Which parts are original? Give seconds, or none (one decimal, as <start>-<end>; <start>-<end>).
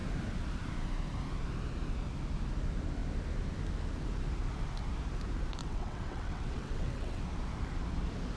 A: 0.0-5.6; 7.2-8.4